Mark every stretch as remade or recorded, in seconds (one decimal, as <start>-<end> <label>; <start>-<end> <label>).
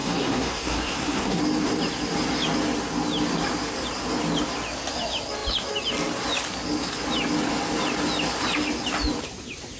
0.0-1.4 remade; 1.4-9.8 recorded